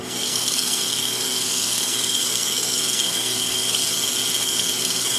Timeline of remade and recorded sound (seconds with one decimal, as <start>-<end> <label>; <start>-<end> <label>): 0.0-3.8 remade; 3.8-4.4 recorded; 4.4-5.2 remade